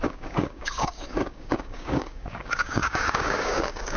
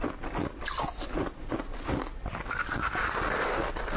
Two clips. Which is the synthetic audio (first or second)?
first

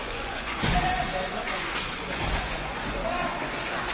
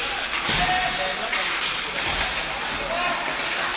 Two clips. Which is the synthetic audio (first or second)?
first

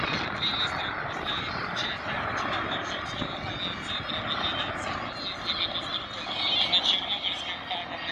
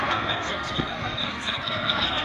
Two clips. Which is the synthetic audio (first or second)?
second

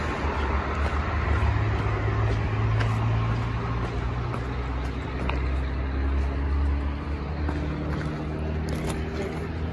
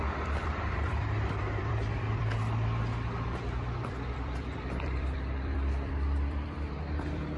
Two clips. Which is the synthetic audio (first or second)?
second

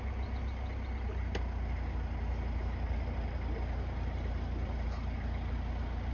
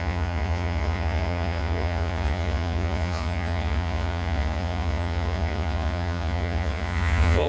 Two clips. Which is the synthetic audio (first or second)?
second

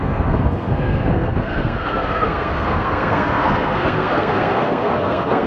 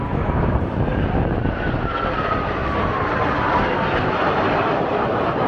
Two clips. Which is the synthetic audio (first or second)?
first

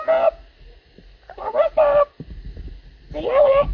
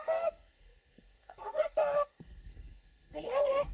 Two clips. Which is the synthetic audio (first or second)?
second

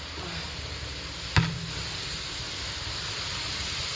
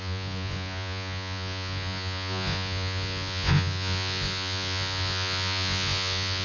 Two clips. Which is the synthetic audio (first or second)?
second